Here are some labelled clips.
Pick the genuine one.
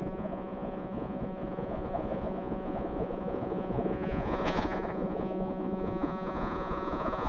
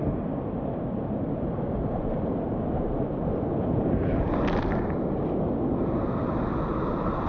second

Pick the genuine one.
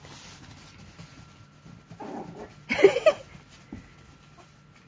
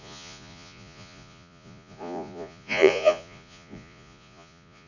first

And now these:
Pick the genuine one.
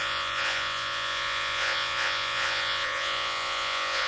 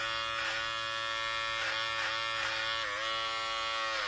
second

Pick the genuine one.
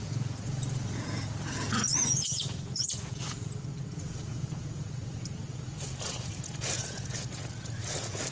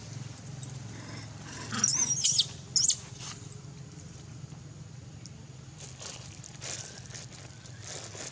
second